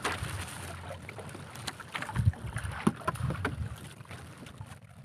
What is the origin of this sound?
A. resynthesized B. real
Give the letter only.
B